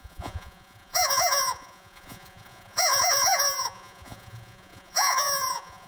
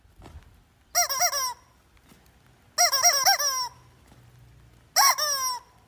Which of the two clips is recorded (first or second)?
second